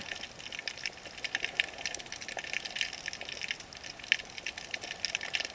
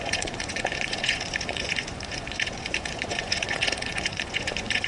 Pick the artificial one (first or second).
second